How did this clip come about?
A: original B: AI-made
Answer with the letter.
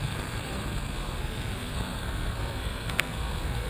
B